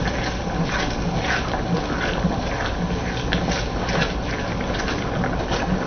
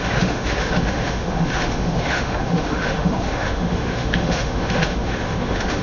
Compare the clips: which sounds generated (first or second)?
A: second